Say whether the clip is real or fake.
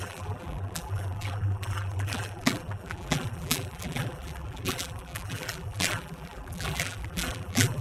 fake